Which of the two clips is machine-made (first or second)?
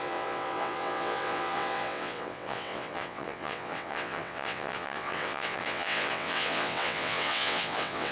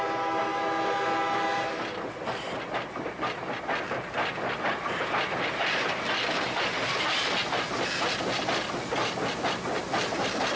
first